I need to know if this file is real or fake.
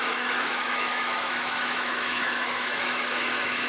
fake